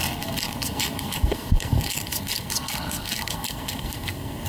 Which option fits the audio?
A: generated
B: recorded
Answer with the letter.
A